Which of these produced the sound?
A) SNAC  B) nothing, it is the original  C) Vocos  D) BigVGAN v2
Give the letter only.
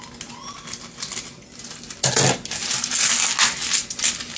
B